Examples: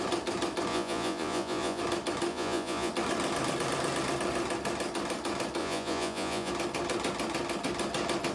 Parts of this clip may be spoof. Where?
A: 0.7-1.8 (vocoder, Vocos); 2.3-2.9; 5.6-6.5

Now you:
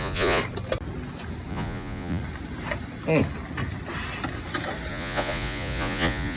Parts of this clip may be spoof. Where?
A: 0.0-0.4 (vocoder, Vocos); 1.5-2.2; 4.9-6.4

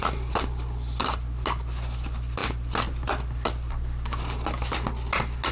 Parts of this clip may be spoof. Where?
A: none